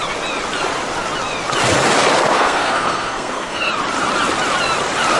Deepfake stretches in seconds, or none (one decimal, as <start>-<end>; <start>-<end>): 2.3-3.7